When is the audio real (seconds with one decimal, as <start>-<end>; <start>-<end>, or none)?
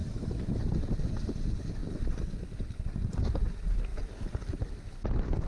0.6-5.5